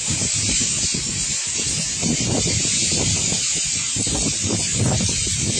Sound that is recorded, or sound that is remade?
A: recorded